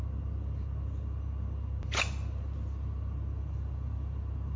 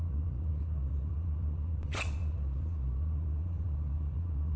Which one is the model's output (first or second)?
second